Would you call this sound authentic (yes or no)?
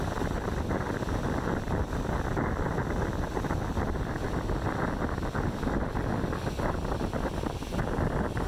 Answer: yes